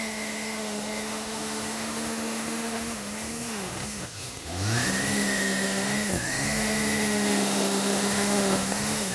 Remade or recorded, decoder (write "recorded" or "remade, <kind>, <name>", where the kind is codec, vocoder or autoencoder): remade, autoencoder, DAC-VAE